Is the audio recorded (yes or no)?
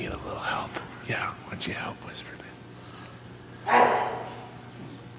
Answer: yes